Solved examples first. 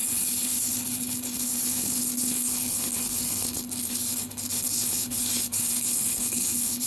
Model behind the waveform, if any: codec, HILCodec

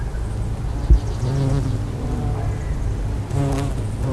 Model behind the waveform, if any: none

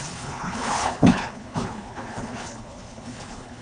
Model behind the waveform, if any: codec, HILCodec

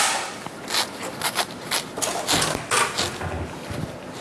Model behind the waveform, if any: none